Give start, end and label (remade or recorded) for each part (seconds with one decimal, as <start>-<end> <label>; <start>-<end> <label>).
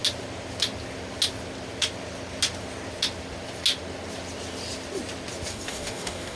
0.0-5.5 recorded; 5.5-6.4 remade